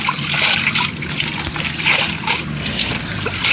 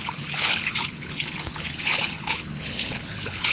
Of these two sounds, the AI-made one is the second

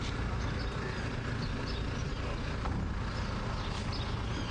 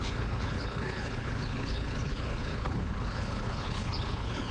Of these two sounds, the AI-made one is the second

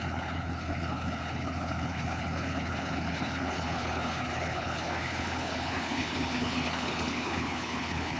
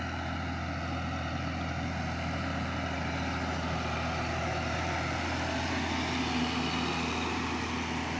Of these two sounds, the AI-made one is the first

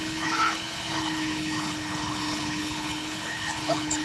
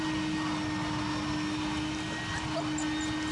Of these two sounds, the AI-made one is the first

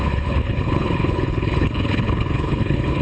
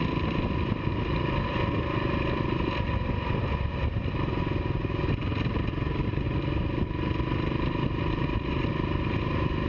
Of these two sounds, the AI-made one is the first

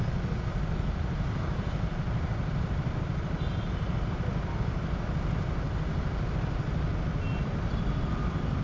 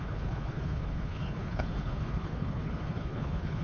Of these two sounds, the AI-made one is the second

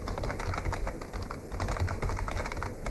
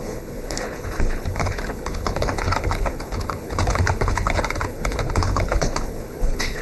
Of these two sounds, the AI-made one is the second